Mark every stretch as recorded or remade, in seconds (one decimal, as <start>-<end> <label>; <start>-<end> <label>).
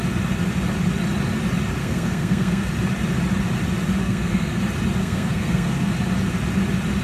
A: 0.0-1.8 recorded; 1.8-2.7 remade; 2.7-4.0 recorded; 4.0-4.6 remade; 4.6-5.0 recorded; 5.0-5.9 remade; 5.9-7.0 recorded